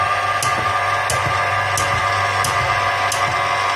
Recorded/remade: recorded